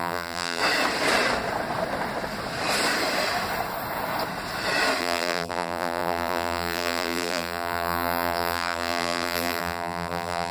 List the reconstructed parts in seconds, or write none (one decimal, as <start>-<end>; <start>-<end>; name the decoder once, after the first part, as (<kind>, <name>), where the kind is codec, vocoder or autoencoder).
0.0-0.6 (vocoder, BigVGAN v2); 5.0-10.5